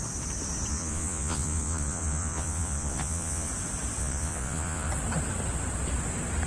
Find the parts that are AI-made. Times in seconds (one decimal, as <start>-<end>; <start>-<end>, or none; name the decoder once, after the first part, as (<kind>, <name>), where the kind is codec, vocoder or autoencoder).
0.7-3.5 (vocoder, Vocos); 4.0-4.9